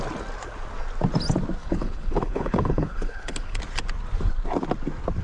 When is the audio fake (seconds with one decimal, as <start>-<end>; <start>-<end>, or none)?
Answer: 1.6-3.6